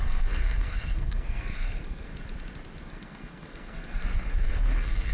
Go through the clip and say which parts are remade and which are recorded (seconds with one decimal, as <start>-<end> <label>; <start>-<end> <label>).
0.0-2.1 remade; 2.1-2.8 recorded; 2.8-5.1 remade